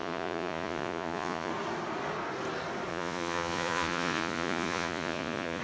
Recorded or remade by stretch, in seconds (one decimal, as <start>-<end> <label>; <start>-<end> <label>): 0.0-1.5 remade; 1.5-2.9 recorded; 2.9-5.6 remade